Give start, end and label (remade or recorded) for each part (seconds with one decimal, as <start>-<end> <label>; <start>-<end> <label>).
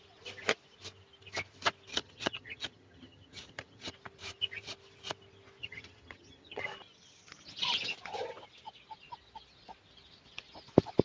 0.0-1.9 recorded; 1.9-3.9 remade; 3.9-5.6 recorded; 5.6-6.6 remade; 6.6-11.0 recorded